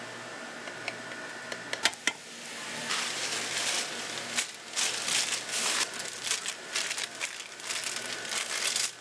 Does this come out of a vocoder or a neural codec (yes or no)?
no